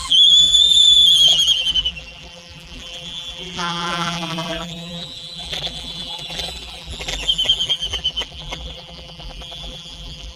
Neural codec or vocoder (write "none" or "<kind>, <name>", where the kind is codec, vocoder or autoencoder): vocoder, BigVGAN v2